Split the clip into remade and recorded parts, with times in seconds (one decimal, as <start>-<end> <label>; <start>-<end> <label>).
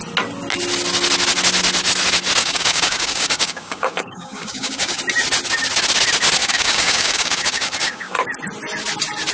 0.0-2.4 recorded; 2.4-5.0 remade; 5.0-6.4 recorded; 6.4-8.1 remade; 8.1-9.3 recorded